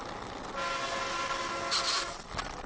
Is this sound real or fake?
real